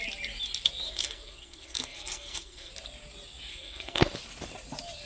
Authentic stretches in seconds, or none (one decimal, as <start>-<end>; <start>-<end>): 0.0-0.9; 2.7-3.5; 4.1-5.1